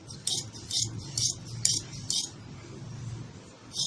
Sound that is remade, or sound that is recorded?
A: recorded